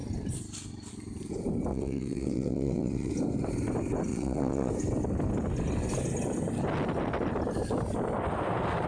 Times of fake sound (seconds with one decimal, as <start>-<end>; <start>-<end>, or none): 1.7-3.1; 4.1-4.7